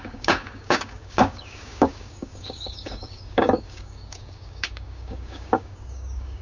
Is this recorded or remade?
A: remade